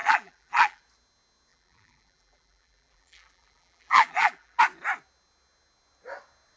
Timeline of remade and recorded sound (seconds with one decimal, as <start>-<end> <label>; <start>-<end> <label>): 0.0-0.8 remade; 0.8-1.5 recorded; 1.5-4.6 remade; 4.6-6.6 recorded